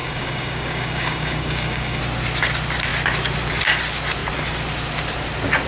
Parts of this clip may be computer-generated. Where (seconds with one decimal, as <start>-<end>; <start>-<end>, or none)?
0.0-2.0